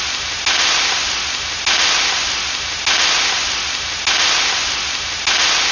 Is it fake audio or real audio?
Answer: real